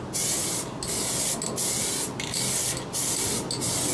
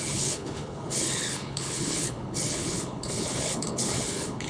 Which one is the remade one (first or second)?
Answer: second